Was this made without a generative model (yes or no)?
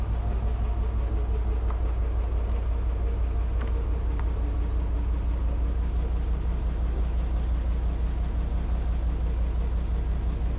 yes